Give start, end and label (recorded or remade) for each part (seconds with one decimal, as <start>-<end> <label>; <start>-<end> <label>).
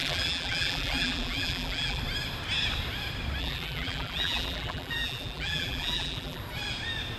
0.0-2.0 remade; 2.0-3.4 recorded; 3.4-6.4 remade; 6.4-7.2 recorded